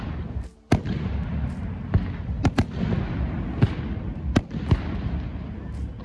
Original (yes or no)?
yes